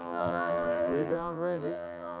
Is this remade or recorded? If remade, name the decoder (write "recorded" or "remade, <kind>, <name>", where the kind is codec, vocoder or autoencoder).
remade, vocoder, BigVGAN v2